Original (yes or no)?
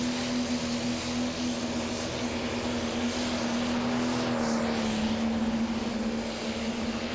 yes